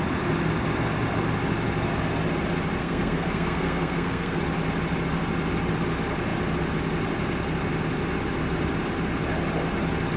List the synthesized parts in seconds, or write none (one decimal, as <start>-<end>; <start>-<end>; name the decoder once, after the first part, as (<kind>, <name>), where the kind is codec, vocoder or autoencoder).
2.8-4.4 (codec, SNAC)